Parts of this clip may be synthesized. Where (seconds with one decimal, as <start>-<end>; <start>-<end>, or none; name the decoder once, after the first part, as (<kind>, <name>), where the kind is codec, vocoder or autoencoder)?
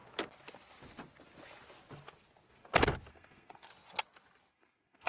3.1-3.7 (codec, SNAC); 4.5-5.1